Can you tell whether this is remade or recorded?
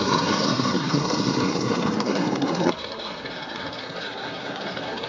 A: remade